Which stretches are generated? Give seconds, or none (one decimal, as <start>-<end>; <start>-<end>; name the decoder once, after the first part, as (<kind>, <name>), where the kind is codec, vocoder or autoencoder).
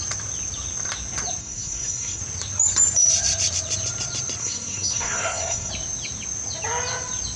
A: 1.4-2.2 (codec, SNAC); 4.4-5.7